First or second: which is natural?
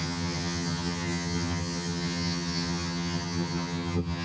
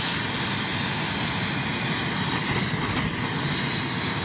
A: second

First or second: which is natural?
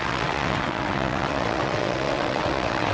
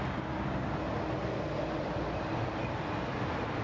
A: second